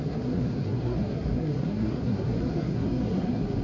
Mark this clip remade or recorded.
remade